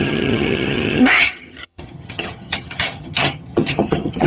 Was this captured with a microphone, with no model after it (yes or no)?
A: no